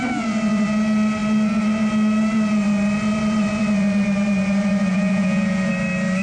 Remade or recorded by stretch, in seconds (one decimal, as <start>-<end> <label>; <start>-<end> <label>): 0.0-4.9 recorded; 4.9-5.7 remade; 5.7-6.2 recorded